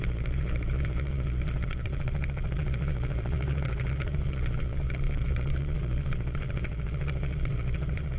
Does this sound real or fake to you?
fake